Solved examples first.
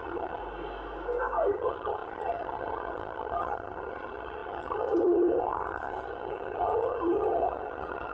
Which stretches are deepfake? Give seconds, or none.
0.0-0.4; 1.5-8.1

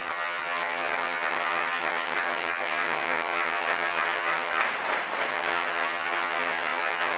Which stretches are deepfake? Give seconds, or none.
0.0-4.6; 5.3-7.2

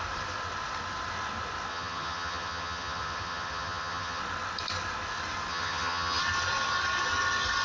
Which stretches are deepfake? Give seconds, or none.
1.7-4.2; 5.5-6.2

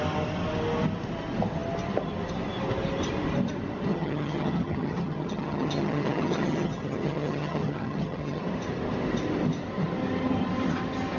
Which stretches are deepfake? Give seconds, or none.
3.9-8.4

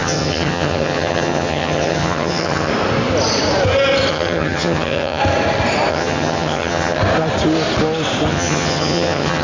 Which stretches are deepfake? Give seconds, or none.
0.0-2.7; 4.1-5.2; 5.9-7.0; 8.3-9.4

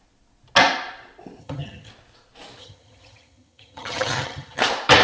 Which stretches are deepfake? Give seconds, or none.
1.4-1.9; 2.6-4.6

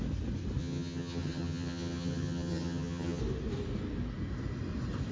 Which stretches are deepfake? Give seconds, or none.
0.6-3.2